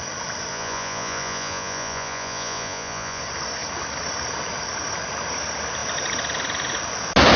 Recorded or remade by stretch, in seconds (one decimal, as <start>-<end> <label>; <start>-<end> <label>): 0.0-0.5 recorded; 0.5-3.2 remade; 3.2-7.4 recorded

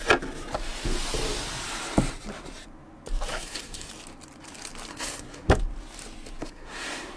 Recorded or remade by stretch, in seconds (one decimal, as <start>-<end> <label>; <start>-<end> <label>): 0.0-3.3 recorded; 3.3-3.9 remade; 3.9-4.9 recorded; 4.9-5.5 remade; 5.5-6.4 recorded; 6.4-7.2 remade

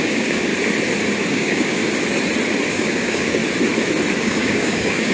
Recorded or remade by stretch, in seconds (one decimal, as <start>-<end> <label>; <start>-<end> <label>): 0.0-0.5 remade; 0.5-1.3 recorded; 1.3-1.8 remade; 1.8-2.7 recorded; 2.7-3.4 remade; 3.4-4.2 recorded; 4.2-5.1 remade

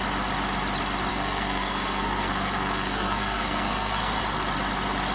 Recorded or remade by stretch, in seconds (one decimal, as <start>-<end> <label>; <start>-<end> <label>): 0.0-1.1 recorded; 1.1-4.2 remade; 4.2-5.1 recorded

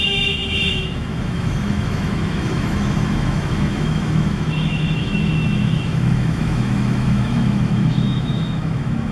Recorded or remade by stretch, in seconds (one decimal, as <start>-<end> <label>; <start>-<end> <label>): 0.0-9.1 remade

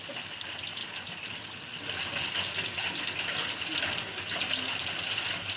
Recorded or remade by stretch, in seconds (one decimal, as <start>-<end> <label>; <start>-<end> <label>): 0.0-5.6 recorded

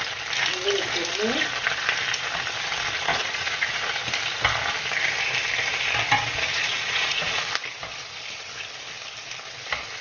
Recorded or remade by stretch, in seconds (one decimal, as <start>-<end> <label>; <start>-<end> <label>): 0.0-3.1 recorded; 3.1-3.9 remade; 3.9-6.5 recorded; 6.5-7.4 remade; 7.4-10.0 recorded